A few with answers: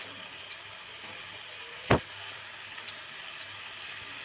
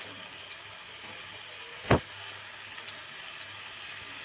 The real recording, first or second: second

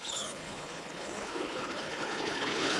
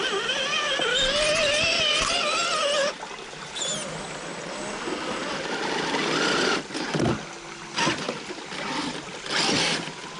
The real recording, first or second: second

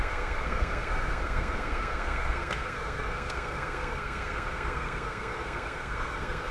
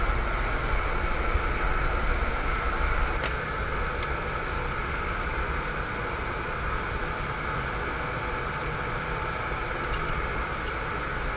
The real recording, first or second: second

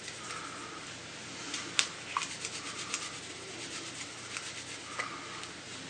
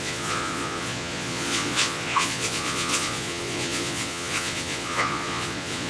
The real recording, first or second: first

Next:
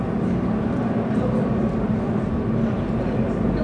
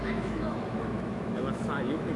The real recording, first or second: first